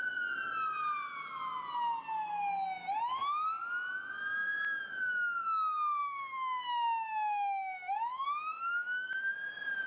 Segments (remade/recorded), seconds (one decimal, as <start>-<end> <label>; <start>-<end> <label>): 0.0-6.0 recorded; 6.0-9.3 remade; 9.3-9.9 recorded